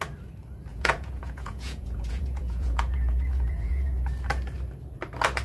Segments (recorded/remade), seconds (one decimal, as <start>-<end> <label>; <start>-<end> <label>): 0.0-0.7 recorded; 0.7-3.9 remade; 3.9-5.4 recorded